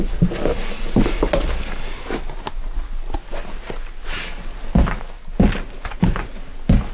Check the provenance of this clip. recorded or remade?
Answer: recorded